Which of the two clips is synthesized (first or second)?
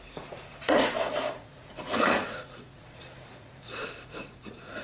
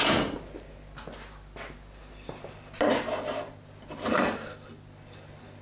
first